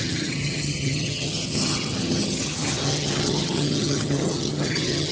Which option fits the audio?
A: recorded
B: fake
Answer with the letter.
B